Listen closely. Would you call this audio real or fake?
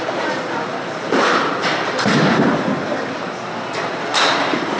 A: real